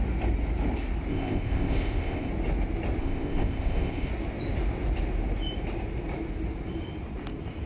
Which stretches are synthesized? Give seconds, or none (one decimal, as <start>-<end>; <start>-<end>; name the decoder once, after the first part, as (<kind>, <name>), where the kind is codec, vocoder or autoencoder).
1.1-2.3 (codec, ZipCodec); 3.0-4.1